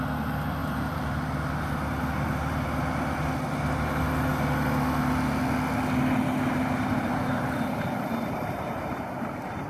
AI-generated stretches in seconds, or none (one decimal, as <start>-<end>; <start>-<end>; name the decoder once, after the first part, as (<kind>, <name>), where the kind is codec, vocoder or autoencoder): 0.6-2.8 (vocoder, BigVGAN v2)